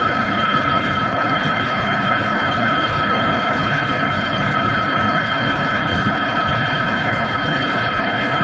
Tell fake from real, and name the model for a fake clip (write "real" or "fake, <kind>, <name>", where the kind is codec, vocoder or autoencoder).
fake, codec, HILCodec